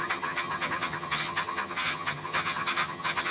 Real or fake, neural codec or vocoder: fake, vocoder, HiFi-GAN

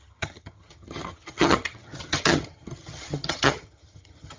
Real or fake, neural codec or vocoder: fake, vocoder, HiFi-GAN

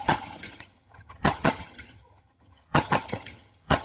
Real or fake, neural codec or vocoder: fake, vocoder, HiFi-GAN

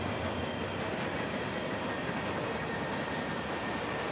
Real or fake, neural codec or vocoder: real